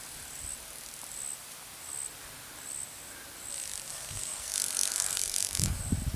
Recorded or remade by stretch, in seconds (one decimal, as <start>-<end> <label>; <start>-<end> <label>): 0.0-3.9 recorded; 3.9-5.8 remade; 5.8-6.2 recorded